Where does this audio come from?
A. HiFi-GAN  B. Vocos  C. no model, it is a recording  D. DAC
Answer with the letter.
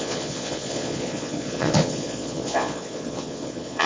B